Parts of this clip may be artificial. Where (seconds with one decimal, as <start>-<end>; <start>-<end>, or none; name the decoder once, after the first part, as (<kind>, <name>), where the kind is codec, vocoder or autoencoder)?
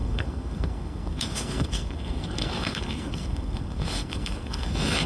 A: 0.0-5.1 (codec, SNAC)